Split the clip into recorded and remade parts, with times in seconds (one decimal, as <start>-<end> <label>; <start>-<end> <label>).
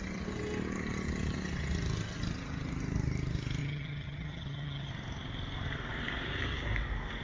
0.0-3.6 recorded; 3.6-4.9 remade; 4.9-7.2 recorded